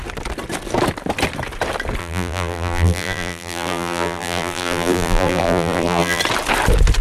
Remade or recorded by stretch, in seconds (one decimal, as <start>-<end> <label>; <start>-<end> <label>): 0.0-2.0 recorded; 2.0-6.2 remade; 6.2-7.0 recorded